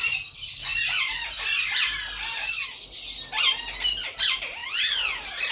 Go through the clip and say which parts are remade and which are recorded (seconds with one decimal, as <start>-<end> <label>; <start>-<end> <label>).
0.0-5.5 recorded